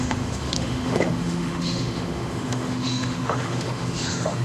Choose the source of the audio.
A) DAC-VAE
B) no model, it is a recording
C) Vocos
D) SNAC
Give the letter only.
A